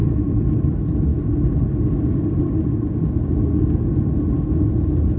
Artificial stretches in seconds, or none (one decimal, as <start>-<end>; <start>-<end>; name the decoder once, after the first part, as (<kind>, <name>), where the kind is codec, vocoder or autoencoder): none